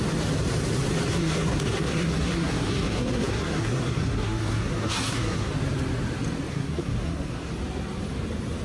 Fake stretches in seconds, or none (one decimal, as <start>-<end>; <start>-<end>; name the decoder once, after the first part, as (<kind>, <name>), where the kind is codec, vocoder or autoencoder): 1.1-5.5 (codec, SNAC); 6.5-7.5